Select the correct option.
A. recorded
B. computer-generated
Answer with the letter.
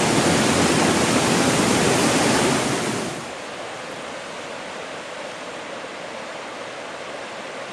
A